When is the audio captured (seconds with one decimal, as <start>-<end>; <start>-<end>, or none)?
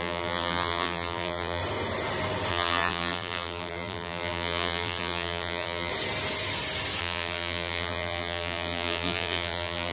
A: 1.6-2.5; 5.9-7.0